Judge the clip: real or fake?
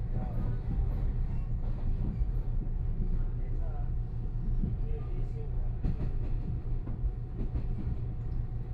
real